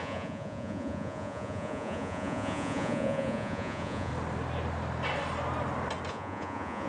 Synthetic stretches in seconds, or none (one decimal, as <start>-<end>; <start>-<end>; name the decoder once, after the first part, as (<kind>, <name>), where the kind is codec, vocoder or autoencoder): 0.0-4.1 (vocoder, Vocos); 6.1-6.9